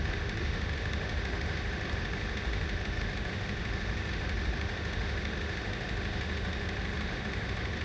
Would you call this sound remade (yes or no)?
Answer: yes